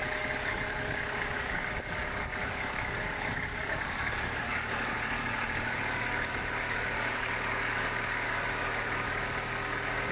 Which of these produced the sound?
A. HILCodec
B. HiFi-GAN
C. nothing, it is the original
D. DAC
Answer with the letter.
D